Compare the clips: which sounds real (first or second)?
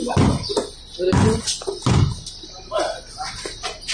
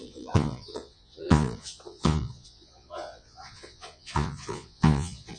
first